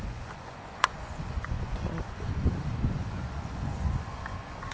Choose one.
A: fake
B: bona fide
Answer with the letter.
A